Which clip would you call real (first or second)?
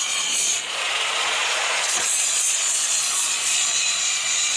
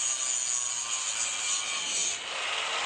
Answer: second